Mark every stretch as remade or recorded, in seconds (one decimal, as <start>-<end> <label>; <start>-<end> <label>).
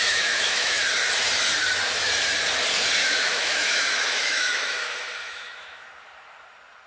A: 0.0-0.8 remade; 0.8-3.0 recorded; 3.0-5.9 remade; 5.9-6.9 recorded